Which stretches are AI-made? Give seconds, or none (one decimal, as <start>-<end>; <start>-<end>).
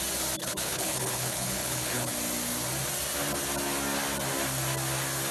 0.4-2.1